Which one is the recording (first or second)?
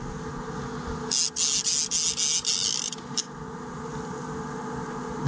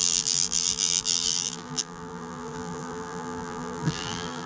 first